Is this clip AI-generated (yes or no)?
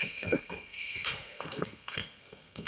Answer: yes